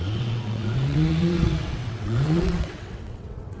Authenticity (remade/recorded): remade